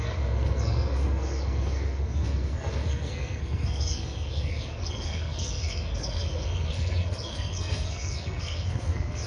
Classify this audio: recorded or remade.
remade